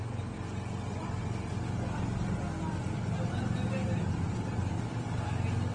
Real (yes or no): yes